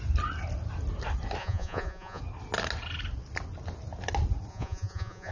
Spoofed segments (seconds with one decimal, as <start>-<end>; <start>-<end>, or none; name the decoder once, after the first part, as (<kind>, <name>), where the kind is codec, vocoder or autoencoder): 1.4-2.2 (vocoder, Vocos); 4.5-5.3

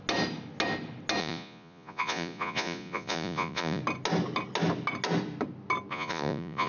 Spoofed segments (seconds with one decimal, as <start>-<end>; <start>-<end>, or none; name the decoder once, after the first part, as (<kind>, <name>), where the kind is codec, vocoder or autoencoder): 1.2-3.8 (vocoder, Vocos); 5.9-6.7

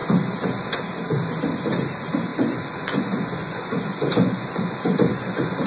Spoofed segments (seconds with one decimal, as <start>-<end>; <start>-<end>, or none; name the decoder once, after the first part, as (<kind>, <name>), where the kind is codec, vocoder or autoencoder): 0.0-0.8 (vocoder, Vocos); 2.3-5.7

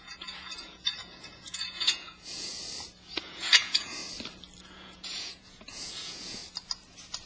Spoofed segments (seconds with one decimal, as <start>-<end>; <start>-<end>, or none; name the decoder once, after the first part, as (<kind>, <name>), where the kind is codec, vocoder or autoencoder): 0.0-2.5 (vocoder, Vocos); 3.2-4.0; 4.6-6.4

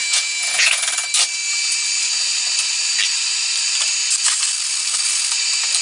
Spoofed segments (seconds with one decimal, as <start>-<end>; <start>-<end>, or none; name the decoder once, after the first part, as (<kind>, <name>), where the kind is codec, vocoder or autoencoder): 0.0-0.8 (vocoder, Vocos)

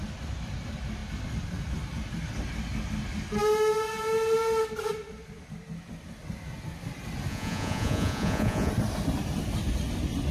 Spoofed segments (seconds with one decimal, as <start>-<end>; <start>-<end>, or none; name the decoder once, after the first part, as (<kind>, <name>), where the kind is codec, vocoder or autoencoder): 7.3-8.7 (vocoder, Vocos)

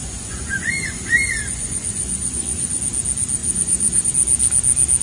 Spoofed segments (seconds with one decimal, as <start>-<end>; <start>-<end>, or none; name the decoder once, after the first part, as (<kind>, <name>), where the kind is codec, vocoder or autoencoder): 0.0-2.8 (vocoder, Vocos); 3.4-4.1

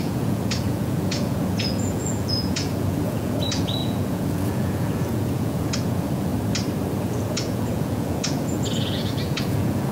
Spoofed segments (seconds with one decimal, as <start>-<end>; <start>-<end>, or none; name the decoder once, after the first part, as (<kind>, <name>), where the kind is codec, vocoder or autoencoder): 0.0-6.3 (vocoder, Vocos); 7.0-9.9